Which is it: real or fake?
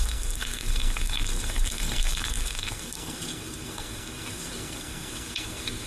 fake